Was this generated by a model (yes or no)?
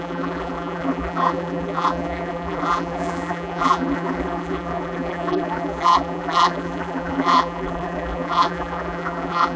yes